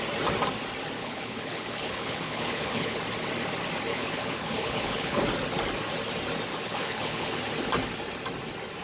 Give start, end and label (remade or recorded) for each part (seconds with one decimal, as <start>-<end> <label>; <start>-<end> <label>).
0.0-1.0 recorded; 1.0-3.0 remade; 3.0-3.9 recorded; 3.9-5.2 remade; 5.2-6.5 recorded; 6.5-7.4 remade; 7.4-8.8 recorded